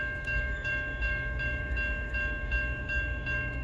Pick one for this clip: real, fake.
fake